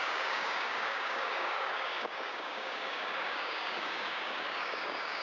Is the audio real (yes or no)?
no